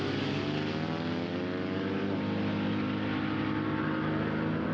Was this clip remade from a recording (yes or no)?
no